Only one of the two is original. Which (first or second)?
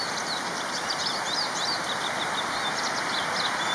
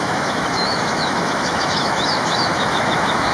first